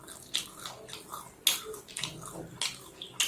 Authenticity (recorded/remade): recorded